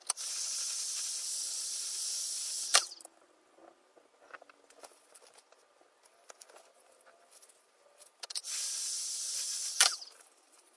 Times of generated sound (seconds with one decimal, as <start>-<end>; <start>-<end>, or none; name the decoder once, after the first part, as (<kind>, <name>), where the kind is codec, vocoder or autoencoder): none